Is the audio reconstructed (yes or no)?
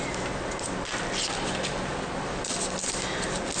no